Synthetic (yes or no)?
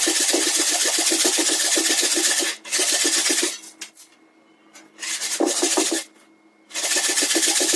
no